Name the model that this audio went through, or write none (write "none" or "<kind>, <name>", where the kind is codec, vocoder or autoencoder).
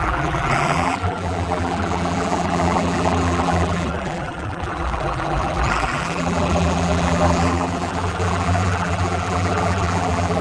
vocoder, BigVGAN v2